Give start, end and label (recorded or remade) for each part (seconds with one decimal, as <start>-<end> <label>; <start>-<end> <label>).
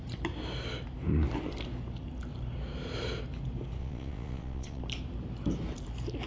0.0-3.8 recorded; 3.8-4.8 remade; 4.8-6.3 recorded